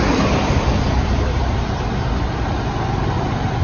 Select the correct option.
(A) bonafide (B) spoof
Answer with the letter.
A